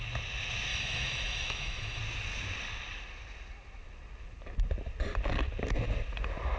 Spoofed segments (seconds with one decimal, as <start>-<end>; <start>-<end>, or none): 0.7-2.0

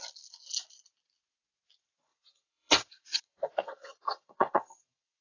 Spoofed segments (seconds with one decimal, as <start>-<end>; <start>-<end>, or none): 2.1-5.2

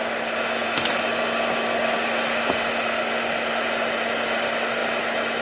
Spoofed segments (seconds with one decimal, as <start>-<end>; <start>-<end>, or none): none

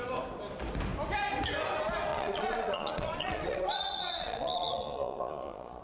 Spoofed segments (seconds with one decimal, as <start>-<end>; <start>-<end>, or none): 2.1-5.8

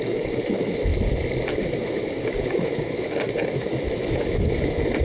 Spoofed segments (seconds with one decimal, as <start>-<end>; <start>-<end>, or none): 0.0-0.9; 1.5-5.0